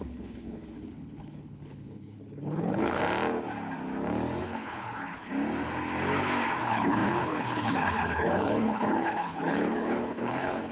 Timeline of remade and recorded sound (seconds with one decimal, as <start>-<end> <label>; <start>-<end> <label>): 0.0-3.0 remade; 3.0-4.4 recorded; 4.4-5.3 remade; 5.3-6.6 recorded; 6.6-10.7 remade